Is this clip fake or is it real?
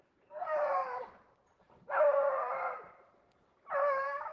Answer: fake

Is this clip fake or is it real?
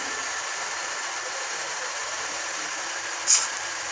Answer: fake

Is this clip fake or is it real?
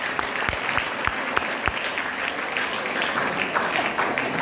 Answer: real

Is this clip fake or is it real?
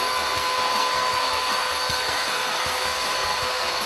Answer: fake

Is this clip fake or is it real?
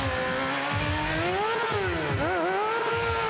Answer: real